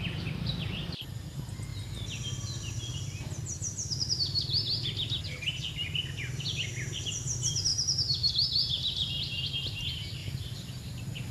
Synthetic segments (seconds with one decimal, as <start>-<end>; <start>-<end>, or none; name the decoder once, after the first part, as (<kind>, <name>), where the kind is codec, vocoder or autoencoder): 10.2-11.3 (vocoder, BigVGAN v2)